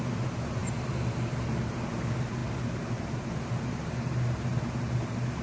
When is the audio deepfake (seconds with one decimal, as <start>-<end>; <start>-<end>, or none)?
none